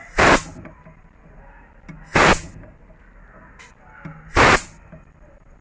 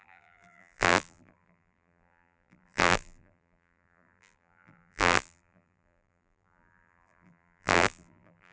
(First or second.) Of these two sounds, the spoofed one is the second